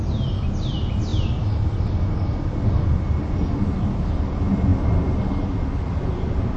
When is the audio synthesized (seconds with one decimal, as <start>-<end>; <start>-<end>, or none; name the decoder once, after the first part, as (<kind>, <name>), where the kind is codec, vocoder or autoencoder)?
none